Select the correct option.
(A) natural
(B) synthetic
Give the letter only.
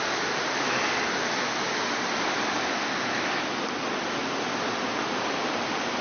A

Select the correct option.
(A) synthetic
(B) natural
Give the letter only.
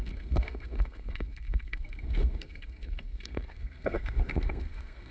A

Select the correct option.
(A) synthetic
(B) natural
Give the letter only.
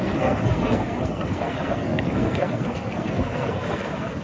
A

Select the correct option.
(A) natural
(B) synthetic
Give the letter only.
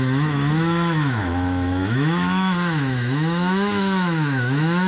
B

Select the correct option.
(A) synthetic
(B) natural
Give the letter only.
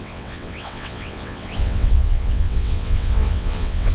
A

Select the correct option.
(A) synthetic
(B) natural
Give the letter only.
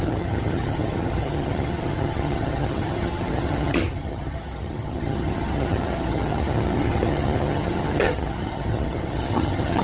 A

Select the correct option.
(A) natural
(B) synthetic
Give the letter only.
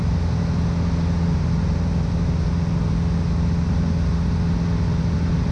A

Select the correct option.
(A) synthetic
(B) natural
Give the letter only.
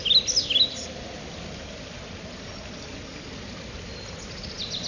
B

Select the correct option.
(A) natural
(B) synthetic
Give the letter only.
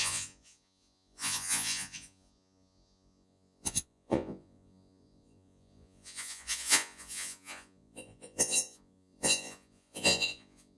B